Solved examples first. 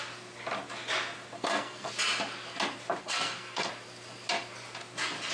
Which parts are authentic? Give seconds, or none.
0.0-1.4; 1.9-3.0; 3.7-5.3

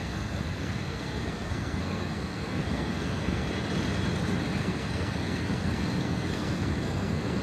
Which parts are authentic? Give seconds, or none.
3.5-4.6

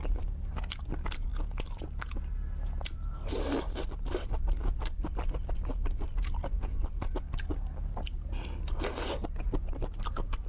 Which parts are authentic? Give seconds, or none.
0.0-10.5

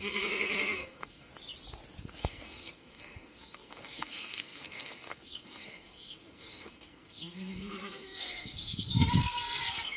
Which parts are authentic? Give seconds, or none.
1.3-2.0

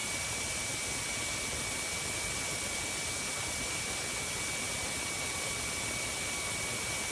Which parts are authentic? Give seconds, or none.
0.0-7.1

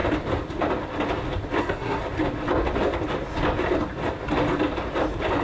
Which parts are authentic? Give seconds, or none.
0.0-1.6; 2.0-5.4

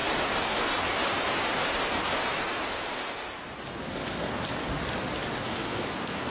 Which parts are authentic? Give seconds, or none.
0.0-3.8; 4.3-5.4